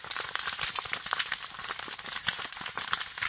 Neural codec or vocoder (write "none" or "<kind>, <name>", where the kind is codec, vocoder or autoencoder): none